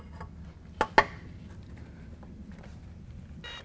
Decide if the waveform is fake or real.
real